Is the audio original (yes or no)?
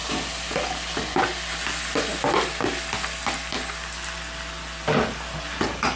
yes